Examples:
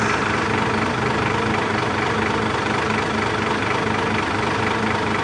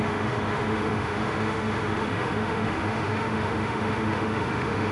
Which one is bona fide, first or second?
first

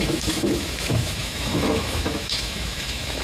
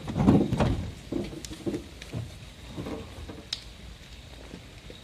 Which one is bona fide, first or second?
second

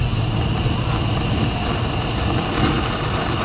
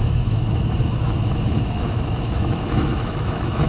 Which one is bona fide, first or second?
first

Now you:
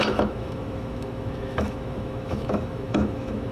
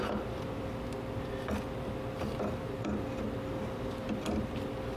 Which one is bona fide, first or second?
second